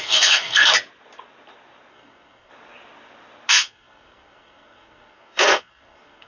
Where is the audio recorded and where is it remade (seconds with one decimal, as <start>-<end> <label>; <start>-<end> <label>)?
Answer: 0.0-0.7 remade; 0.7-1.9 recorded; 1.9-2.5 remade; 2.5-3.5 recorded; 3.5-6.3 remade

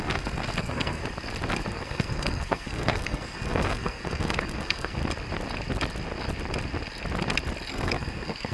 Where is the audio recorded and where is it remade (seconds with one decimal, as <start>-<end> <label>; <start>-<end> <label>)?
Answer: 0.0-1.0 remade; 1.0-1.7 recorded; 1.7-5.0 remade; 5.0-7.7 recorded; 7.7-8.5 remade